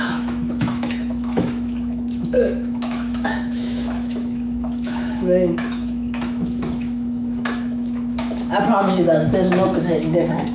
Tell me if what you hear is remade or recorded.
remade